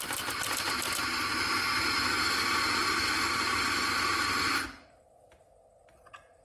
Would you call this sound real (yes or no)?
yes